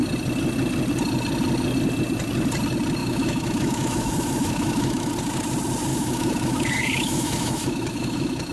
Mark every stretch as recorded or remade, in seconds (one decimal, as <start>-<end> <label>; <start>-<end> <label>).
0.0-3.0 recorded; 3.0-5.1 remade; 5.1-5.9 recorded; 5.9-8.5 remade